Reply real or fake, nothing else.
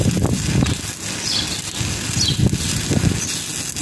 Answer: real